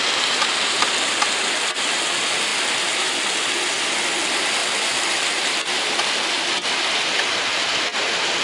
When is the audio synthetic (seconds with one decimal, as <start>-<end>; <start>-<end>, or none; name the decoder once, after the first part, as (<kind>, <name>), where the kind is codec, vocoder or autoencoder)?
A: none